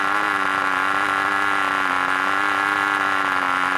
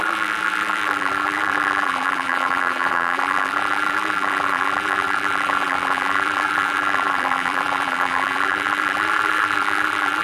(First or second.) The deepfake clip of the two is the second